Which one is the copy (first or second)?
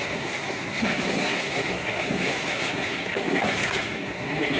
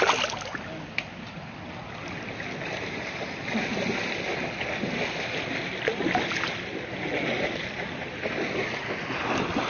first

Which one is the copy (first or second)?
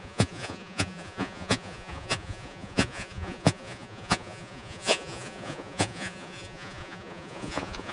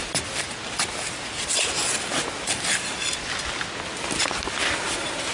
first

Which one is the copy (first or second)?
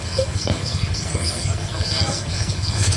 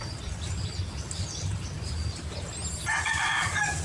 first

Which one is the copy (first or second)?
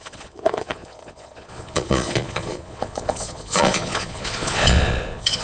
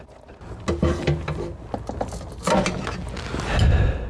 first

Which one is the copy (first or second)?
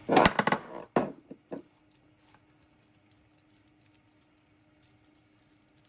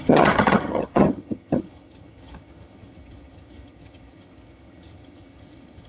second